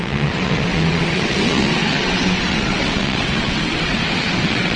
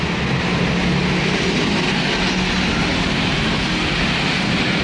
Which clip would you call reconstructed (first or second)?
first